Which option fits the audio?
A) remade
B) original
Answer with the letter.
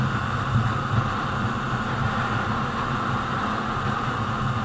B